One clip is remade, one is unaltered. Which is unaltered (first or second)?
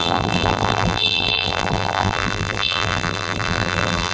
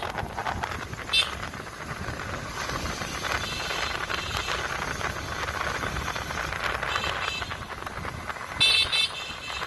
second